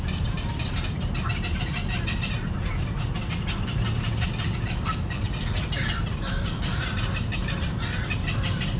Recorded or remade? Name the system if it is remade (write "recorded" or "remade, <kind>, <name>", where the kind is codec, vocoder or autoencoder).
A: recorded